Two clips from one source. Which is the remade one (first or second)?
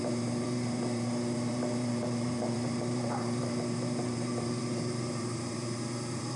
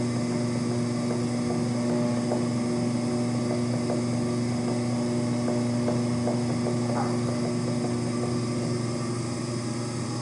first